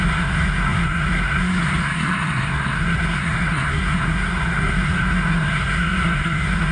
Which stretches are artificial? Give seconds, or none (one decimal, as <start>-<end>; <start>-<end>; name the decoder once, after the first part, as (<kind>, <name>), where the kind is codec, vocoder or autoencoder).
0.0-6.7 (codec, SNAC)